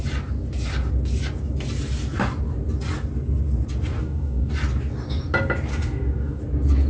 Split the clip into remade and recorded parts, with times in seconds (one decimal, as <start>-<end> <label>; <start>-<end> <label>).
0.0-4.0 recorded; 4.0-4.5 remade; 4.5-5.7 recorded; 5.7-6.4 remade; 6.4-6.9 recorded